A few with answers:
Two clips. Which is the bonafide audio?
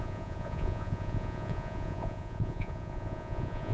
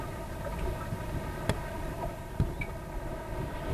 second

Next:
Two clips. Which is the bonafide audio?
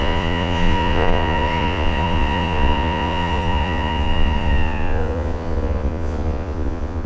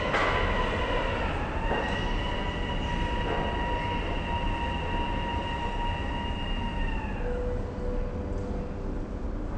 second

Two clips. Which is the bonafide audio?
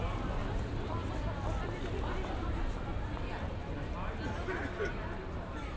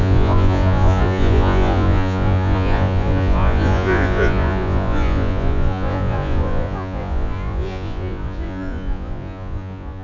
first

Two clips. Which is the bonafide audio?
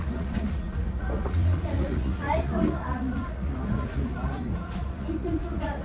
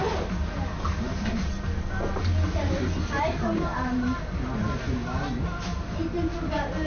second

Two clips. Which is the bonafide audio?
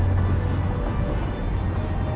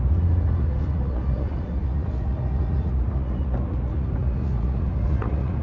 first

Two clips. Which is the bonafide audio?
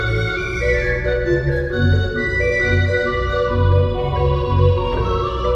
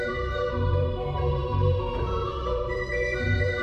first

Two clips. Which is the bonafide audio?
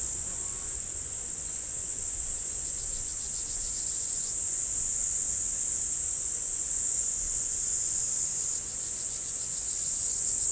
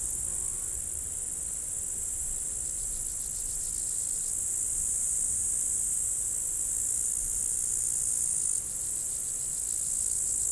second